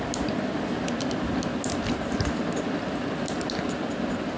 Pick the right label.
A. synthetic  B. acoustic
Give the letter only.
B